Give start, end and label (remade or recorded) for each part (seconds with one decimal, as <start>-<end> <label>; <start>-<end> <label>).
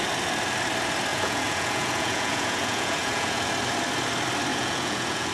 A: 0.0-1.1 recorded; 1.1-3.5 remade; 3.5-4.5 recorded; 4.5-5.3 remade